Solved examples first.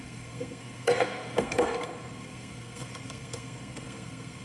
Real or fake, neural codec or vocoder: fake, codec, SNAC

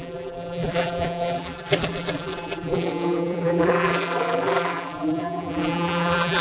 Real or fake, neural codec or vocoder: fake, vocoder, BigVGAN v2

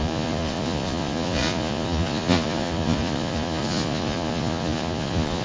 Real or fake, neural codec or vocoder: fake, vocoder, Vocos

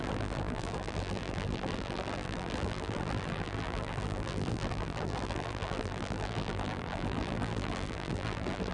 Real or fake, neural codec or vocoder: fake, vocoder, BigVGAN v2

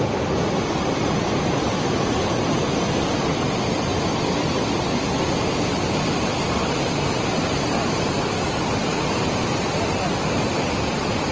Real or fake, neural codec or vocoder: real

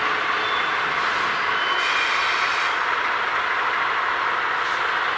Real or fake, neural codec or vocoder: real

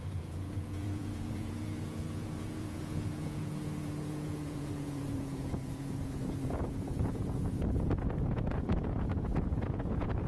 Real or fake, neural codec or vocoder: fake, vocoder, Vocos